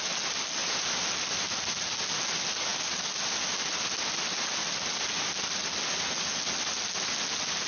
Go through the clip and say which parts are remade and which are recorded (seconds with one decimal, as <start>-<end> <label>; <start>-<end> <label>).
0.0-0.6 recorded; 0.6-1.1 remade; 1.1-7.7 recorded